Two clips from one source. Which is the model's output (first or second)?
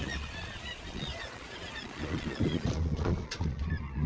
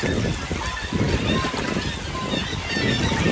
first